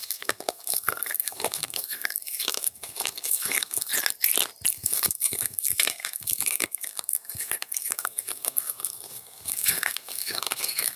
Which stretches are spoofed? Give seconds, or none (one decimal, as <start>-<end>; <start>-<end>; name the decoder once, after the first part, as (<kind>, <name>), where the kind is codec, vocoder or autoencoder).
0.0-3.9 (codec, SNAC); 4.7-11.0